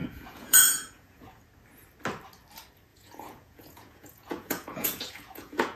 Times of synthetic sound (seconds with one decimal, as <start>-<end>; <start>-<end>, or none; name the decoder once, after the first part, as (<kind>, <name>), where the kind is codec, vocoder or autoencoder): 0.0-1.4 (vocoder, Vocos); 2.9-5.8